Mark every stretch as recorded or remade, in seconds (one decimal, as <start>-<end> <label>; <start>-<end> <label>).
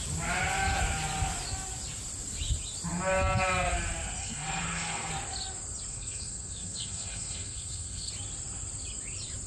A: 0.0-4.2 recorded; 4.2-5.1 remade; 5.1-5.9 recorded; 5.9-8.1 remade; 8.1-9.5 recorded